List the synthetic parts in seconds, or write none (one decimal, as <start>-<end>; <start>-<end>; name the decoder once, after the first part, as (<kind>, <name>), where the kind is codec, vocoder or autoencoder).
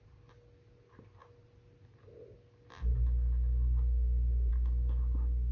none